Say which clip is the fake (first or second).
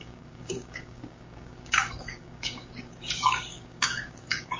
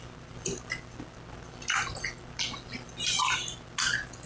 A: first